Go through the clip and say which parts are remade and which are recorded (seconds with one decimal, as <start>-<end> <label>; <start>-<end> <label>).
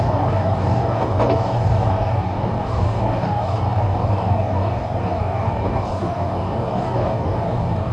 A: 0.0-7.9 remade